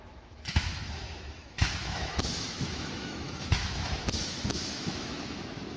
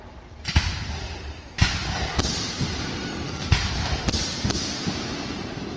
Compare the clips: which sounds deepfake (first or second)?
first